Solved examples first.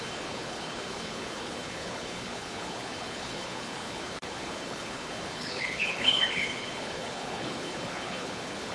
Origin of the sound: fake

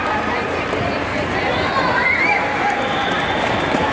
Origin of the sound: real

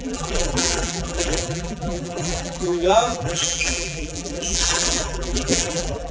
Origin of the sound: fake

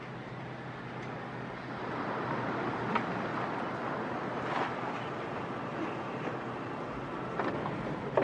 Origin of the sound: real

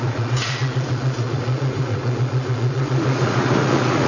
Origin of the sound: fake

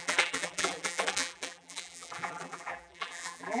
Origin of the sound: fake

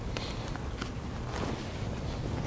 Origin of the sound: real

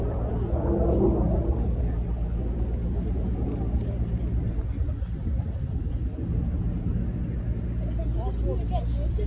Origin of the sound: real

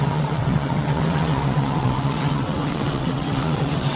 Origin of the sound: fake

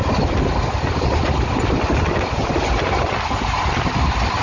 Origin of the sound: real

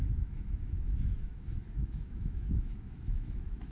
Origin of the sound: fake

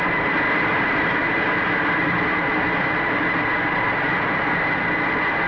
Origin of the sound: real